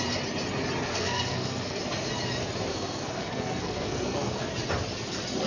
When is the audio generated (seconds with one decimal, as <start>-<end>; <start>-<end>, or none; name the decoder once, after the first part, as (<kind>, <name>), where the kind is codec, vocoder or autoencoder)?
0.9-1.8 (codec, SNAC); 2.7-4.5